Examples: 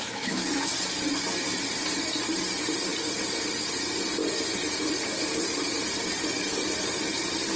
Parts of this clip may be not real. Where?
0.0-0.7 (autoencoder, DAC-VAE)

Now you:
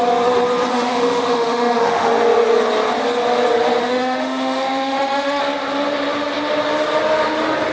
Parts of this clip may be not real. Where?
0.7-2.1 (autoencoder, DAC-VAE); 3.8-5.4

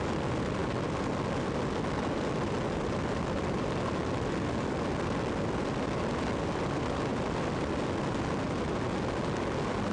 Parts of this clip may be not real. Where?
none

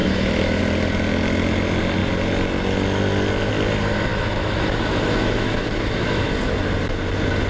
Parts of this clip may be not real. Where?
0.0-0.6 (autoencoder, DAC-VAE); 4.1-6.3